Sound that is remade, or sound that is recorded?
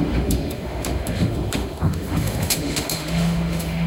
remade